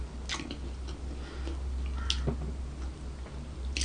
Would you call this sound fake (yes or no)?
no